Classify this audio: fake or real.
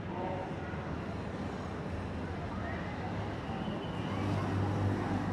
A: real